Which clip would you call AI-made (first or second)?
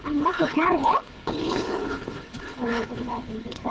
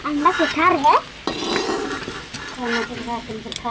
first